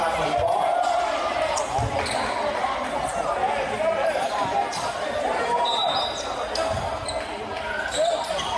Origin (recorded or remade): recorded